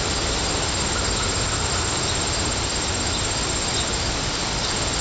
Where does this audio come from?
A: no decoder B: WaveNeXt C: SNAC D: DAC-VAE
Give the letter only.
A